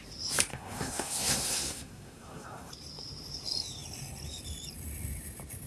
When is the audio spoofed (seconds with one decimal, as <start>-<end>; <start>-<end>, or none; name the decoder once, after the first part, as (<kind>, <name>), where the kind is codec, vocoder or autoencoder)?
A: 0.5-2.7 (codec, SNAC)